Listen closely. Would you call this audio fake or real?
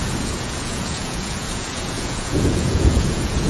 fake